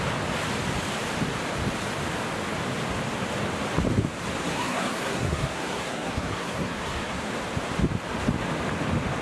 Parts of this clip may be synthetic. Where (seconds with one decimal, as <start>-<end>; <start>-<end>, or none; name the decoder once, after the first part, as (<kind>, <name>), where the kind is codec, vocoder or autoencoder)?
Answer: 4.4-7.3 (codec, SNAC)